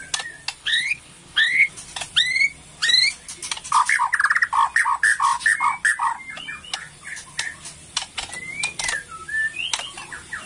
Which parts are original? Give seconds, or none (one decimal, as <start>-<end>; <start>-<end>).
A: 0.0-0.6; 1.7-10.5